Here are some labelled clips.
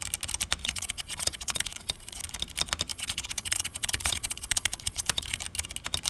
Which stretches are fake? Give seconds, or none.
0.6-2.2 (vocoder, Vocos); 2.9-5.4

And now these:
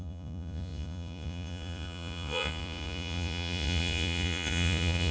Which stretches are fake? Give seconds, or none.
0.0-5.1 (vocoder, Vocos)

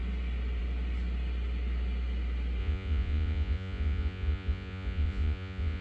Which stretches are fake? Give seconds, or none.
2.6-5.8 (vocoder, Vocos)

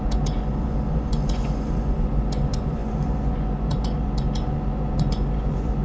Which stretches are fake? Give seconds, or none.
0.0-5.8 (vocoder, Vocos)

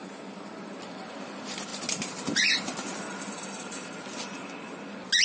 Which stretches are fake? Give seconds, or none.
none